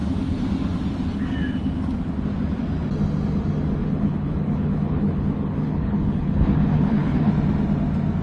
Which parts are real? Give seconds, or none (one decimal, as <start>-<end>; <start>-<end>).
0.0-3.8; 7.3-8.2